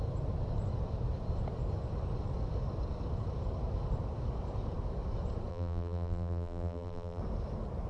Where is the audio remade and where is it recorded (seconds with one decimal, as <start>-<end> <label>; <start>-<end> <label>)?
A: 0.0-5.5 recorded; 5.5-7.2 remade; 7.2-7.9 recorded